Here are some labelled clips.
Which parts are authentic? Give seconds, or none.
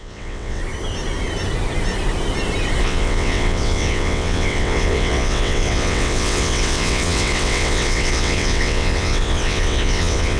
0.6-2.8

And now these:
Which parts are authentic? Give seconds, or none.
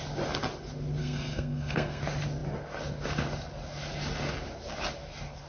0.0-1.0; 2.0-5.5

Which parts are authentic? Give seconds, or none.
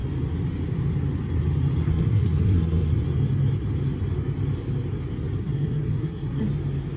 0.0-1.8; 2.9-5.4; 6.4-7.0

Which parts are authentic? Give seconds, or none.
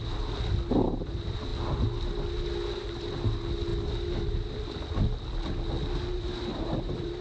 0.0-6.5